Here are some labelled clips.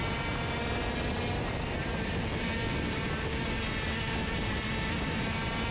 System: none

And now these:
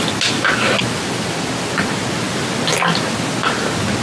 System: none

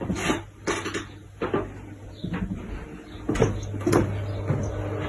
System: none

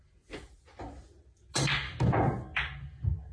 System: none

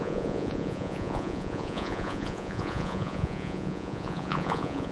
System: vocoder, Vocos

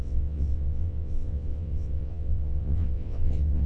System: vocoder, WaveNeXt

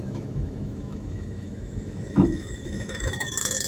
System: autoencoder, DAC-VAE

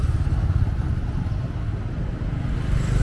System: none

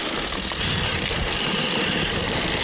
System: none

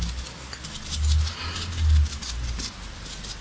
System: none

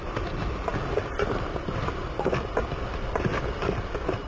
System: none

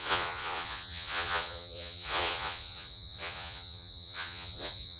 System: vocoder, Vocos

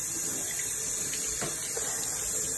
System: none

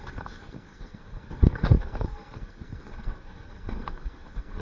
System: codec, SNAC